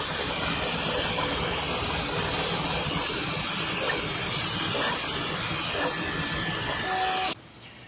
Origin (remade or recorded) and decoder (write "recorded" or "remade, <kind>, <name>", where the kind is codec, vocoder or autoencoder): recorded